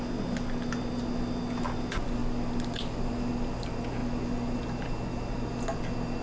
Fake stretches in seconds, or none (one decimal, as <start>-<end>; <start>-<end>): none